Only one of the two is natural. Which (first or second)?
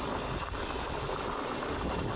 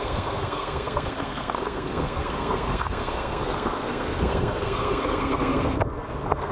first